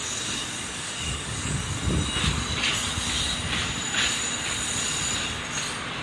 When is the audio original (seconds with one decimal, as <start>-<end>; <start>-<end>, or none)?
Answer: 1.8-6.0